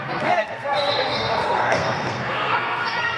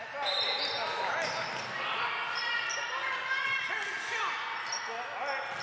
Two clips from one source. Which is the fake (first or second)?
first